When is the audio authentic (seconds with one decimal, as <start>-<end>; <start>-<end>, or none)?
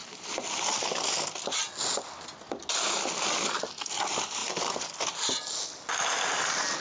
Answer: 0.0-6.8